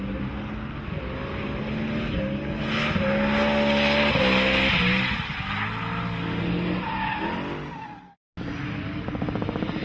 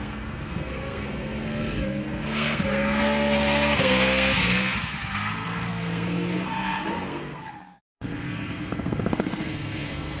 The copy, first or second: second